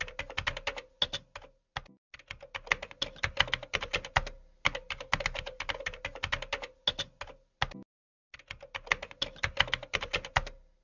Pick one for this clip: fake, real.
real